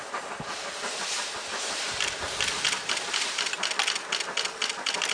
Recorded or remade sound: recorded